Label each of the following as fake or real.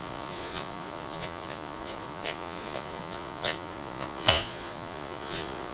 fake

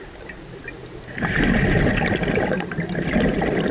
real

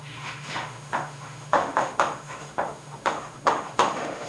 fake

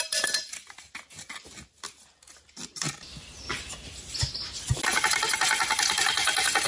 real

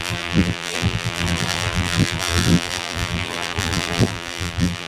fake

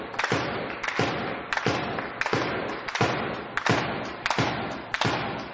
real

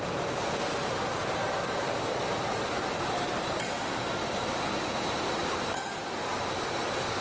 fake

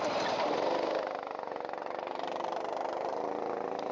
real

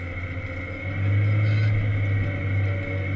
real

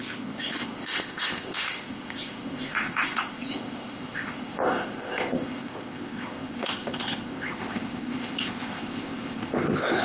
fake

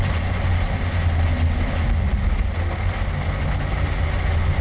real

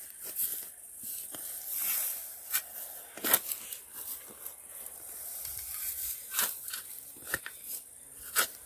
real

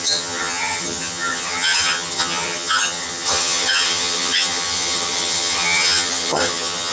fake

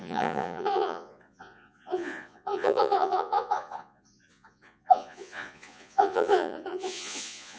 fake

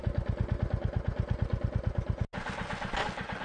real